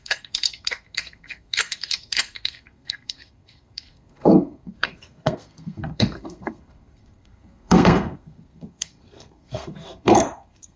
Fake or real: fake